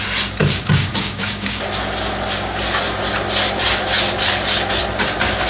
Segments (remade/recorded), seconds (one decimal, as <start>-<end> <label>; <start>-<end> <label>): 0.0-0.4 recorded; 0.4-1.6 remade; 1.6-5.5 recorded